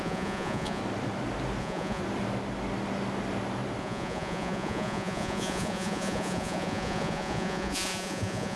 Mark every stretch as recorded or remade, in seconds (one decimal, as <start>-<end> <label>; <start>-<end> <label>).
0.0-0.8 remade; 0.8-1.6 recorded; 1.6-2.0 remade; 2.0-3.8 recorded; 3.8-8.6 remade